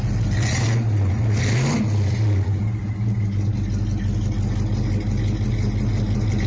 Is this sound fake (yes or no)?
no